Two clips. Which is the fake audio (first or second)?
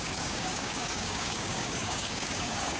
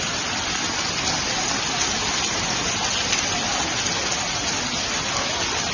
first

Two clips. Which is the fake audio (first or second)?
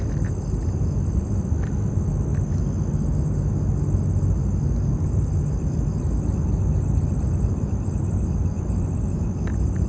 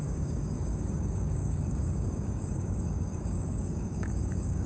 second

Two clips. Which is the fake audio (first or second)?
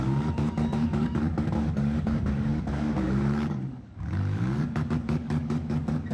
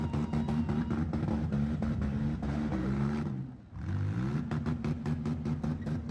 first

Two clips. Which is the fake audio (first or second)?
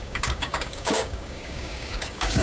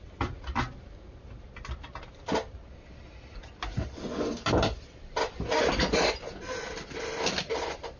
first